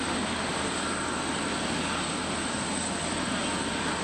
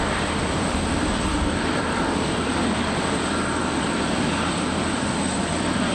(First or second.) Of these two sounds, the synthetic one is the second